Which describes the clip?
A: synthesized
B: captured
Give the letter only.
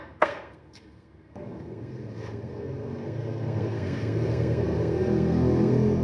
A